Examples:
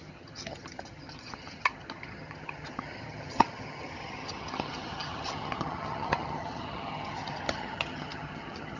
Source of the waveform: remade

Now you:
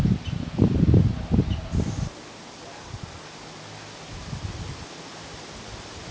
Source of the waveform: recorded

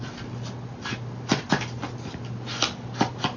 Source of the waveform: recorded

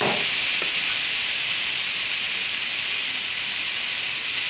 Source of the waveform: recorded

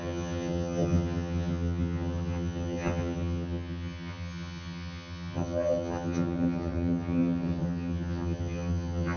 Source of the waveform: remade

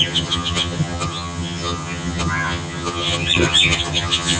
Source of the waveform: remade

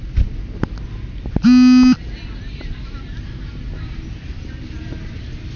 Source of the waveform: recorded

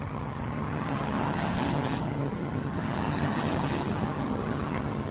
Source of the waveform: remade